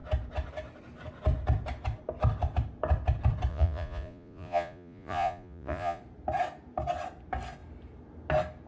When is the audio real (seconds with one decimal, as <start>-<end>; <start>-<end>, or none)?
0.0-3.5; 6.0-8.7